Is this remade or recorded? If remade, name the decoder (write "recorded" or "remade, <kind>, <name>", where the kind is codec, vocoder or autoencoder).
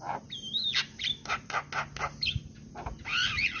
recorded